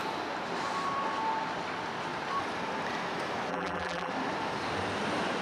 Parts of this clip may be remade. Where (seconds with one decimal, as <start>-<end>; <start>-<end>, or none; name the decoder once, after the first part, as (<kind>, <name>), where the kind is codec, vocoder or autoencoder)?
3.5-4.1 (vocoder, BigVGAN v2)